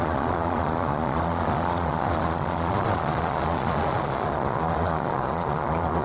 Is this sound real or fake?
fake